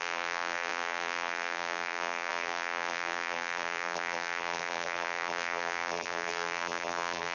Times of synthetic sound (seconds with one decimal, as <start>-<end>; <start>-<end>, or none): 0.0-7.3